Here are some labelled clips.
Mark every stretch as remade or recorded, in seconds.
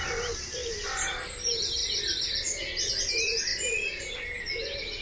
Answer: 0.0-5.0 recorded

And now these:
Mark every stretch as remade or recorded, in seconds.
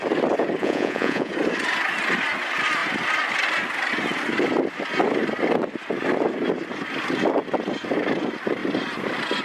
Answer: 0.0-0.6 recorded; 0.6-1.3 remade; 1.3-9.4 recorded